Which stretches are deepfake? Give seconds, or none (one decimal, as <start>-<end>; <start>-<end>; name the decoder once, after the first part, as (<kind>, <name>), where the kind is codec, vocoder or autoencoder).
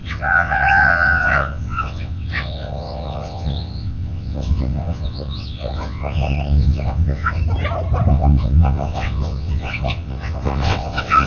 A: 0.0-7.4 (vocoder, WaveNeXt); 8.1-11.3